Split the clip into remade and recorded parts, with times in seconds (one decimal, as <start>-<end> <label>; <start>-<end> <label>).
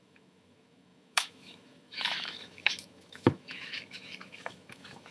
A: 0.0-5.1 remade